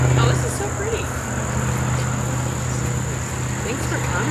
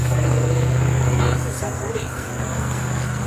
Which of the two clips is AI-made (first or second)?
second